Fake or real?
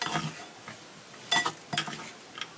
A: real